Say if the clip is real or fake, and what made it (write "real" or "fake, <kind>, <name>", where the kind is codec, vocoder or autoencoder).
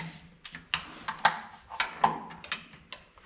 real